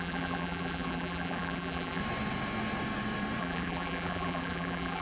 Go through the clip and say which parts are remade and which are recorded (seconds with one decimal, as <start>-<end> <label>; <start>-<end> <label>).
0.0-2.0 remade; 2.0-3.4 recorded; 3.4-5.0 remade